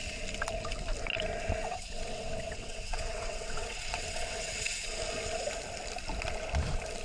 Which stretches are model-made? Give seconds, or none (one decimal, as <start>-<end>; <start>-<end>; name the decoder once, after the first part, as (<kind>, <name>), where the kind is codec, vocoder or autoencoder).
1.6-5.0 (vocoder, WaveNeXt)